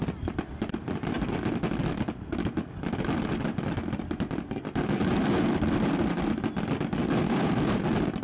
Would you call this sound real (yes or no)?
yes